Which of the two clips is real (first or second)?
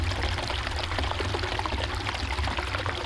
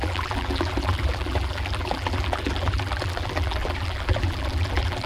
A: first